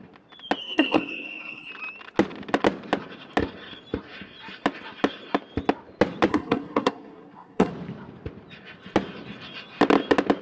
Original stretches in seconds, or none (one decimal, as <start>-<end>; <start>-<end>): 0.0-0.6; 1.7-6.3; 7.7-10.4